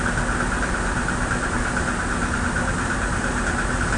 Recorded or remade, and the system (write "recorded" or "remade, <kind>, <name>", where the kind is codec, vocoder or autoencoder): recorded